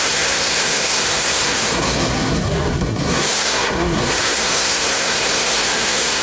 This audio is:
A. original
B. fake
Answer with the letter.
B